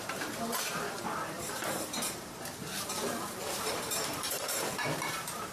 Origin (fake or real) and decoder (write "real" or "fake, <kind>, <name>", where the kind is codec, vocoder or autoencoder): fake, vocoder, BigVGAN v2